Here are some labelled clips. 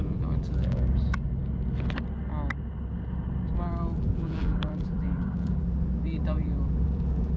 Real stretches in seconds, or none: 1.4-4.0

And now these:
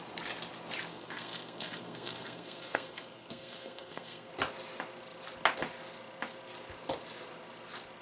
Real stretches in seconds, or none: 0.0-0.9; 4.3-8.0

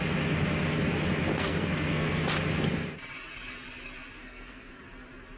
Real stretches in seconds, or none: 0.0-1.3; 2.2-4.2; 4.8-5.4

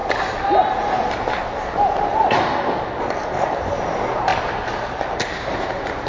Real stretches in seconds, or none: 0.0-3.3